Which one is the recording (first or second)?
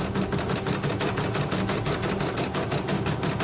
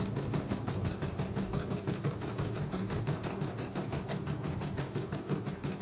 first